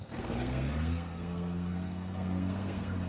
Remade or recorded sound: remade